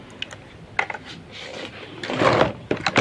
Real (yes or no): yes